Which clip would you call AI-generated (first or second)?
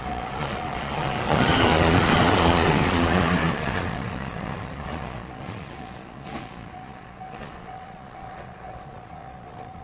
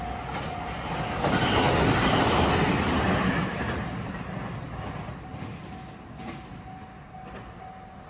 first